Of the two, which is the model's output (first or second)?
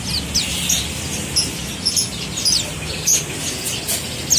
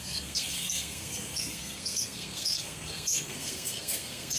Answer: second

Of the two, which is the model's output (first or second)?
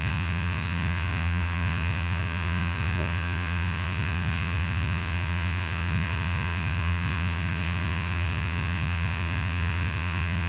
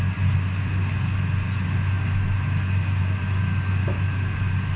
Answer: first